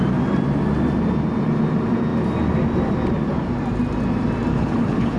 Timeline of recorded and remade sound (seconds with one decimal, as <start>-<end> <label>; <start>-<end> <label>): 0.0-4.5 recorded; 4.5-5.2 remade